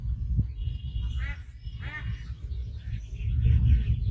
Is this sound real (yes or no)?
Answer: yes